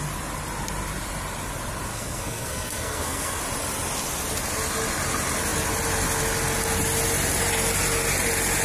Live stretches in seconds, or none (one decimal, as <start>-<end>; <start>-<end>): 0.0-1.9; 3.4-8.6